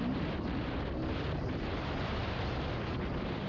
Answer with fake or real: real